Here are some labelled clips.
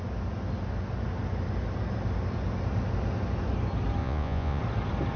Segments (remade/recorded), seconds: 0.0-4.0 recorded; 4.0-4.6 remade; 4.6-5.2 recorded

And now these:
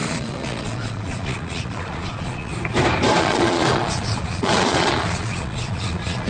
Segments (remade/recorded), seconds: 0.0-2.5 remade; 2.5-3.2 recorded; 3.2-6.3 remade